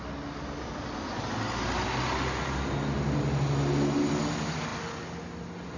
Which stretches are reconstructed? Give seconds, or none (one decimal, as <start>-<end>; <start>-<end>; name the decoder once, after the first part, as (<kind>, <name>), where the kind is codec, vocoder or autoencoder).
none